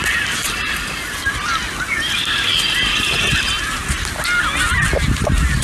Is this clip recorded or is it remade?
recorded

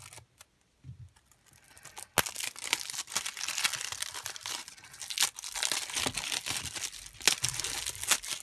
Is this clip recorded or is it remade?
recorded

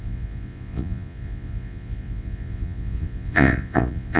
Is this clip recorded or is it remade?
remade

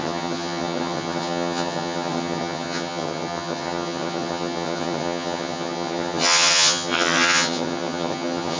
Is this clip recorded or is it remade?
remade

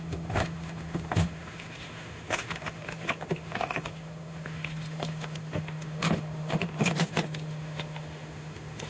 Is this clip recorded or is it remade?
remade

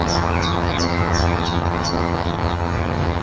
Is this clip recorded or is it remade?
remade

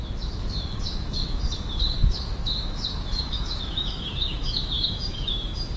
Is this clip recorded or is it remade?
remade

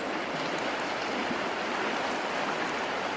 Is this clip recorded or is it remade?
recorded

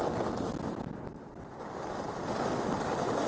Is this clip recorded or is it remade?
recorded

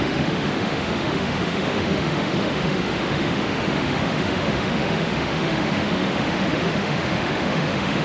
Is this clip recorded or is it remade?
remade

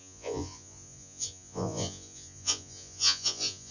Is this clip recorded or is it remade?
remade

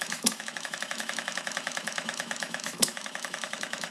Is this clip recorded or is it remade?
remade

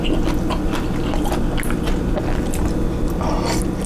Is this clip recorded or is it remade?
recorded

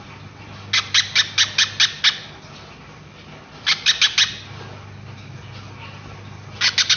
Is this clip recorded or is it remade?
recorded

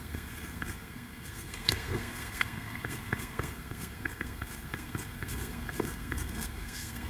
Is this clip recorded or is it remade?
remade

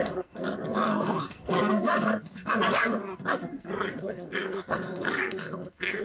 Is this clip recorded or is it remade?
remade